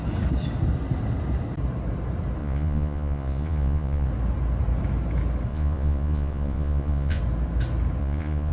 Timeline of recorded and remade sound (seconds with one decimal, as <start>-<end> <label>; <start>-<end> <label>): 0.0-2.4 recorded; 2.4-4.1 remade; 4.1-5.5 recorded; 5.5-7.2 remade; 7.2-8.0 recorded; 8.0-8.5 remade